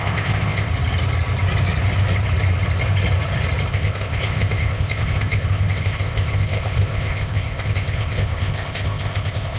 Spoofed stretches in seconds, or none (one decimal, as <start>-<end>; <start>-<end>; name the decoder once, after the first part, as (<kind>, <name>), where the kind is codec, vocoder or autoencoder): 0.0-0.7 (codec, ZipCodec); 3.7-9.6